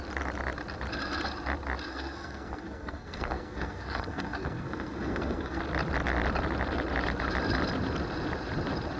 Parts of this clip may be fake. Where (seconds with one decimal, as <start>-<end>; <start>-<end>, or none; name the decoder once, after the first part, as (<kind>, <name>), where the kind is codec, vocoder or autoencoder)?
1.9-5.6 (codec, SNAC)